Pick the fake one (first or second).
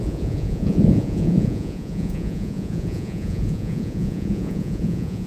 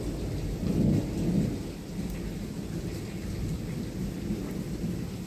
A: first